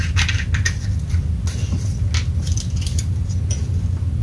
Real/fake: real